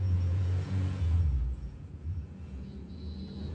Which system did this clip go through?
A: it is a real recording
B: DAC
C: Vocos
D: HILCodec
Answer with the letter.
C